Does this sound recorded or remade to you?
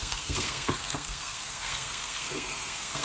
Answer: remade